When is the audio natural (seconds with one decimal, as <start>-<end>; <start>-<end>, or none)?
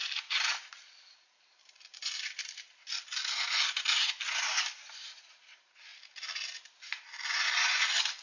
3.5-8.2